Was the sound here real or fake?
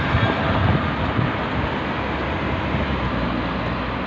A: real